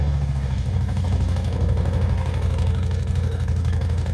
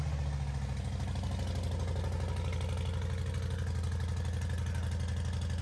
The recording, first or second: second